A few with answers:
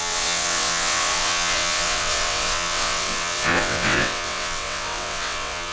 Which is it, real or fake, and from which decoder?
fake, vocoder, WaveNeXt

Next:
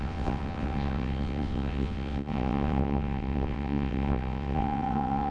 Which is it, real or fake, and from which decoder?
fake, vocoder, WaveNeXt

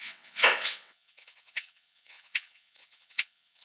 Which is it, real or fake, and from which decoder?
fake, vocoder, WaveNeXt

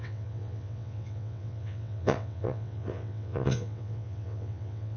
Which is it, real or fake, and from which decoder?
fake, vocoder, WaveNeXt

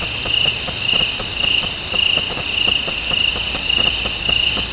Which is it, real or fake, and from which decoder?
real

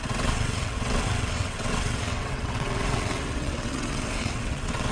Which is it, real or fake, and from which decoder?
fake, vocoder, WaveNeXt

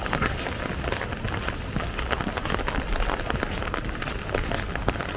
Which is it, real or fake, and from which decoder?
real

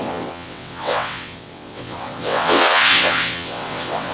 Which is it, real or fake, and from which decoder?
fake, vocoder, WaveNeXt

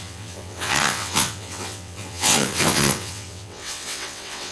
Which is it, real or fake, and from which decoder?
fake, vocoder, WaveNeXt